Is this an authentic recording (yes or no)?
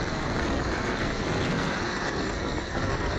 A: no